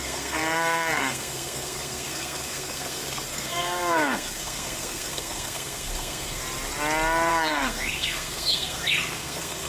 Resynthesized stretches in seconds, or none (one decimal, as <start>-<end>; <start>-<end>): 0.0-6.4; 7.3-9.7